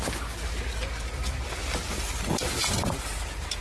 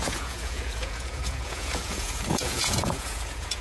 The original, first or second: first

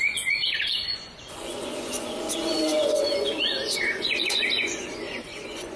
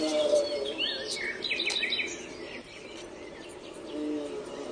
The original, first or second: second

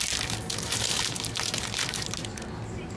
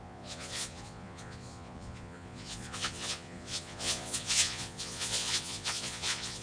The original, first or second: first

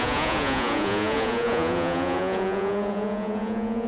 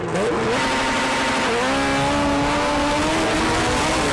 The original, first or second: second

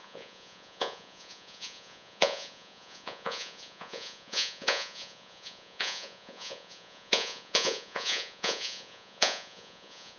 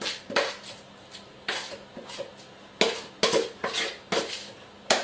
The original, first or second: second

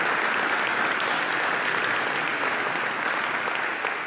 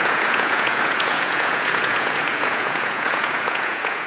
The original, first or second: first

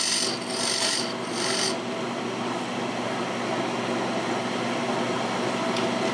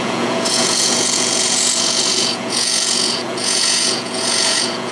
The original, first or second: first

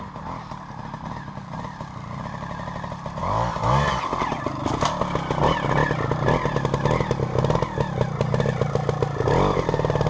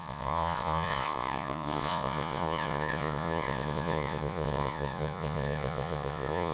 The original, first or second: first